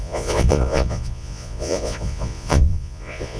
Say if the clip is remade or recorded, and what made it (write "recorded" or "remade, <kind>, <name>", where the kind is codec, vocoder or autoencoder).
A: remade, vocoder, Vocos